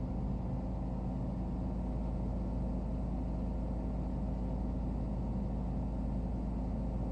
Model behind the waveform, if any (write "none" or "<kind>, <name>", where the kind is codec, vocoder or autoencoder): none